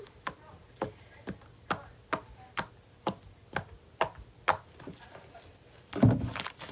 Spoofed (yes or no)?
no